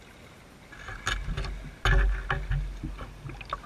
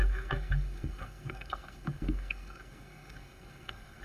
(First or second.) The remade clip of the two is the second